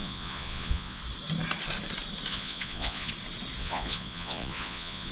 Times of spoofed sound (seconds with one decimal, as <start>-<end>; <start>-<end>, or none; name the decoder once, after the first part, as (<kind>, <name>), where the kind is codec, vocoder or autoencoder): 0.0-1.0 (vocoder, Vocos); 2.3-3.1; 3.6-5.1